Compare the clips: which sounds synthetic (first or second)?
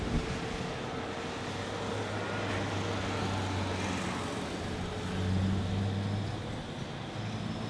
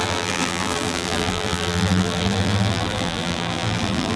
second